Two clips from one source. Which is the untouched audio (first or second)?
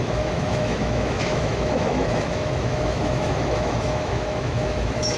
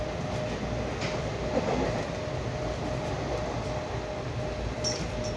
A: second